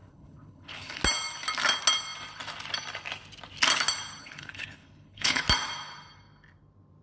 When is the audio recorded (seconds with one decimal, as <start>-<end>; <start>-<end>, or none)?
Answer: 1.0-4.2; 5.4-7.0